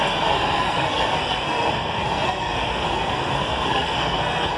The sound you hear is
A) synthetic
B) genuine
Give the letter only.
A